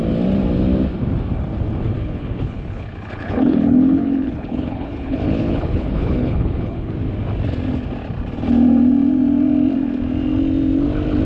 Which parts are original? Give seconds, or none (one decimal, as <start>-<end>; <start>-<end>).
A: 0.0-2.0; 6.9-11.2